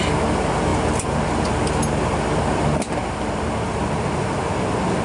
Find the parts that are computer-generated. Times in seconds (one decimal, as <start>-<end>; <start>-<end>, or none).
3.0-3.5

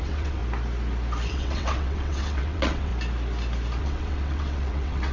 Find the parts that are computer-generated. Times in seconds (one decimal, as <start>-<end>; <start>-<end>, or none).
0.0-0.4; 1.3-2.9; 3.8-5.1